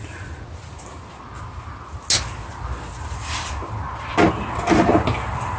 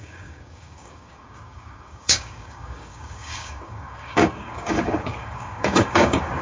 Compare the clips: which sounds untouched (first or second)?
first